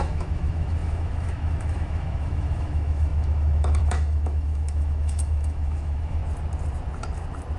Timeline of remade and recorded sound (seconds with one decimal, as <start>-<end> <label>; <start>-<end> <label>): 0.0-6.2 remade; 6.2-7.6 recorded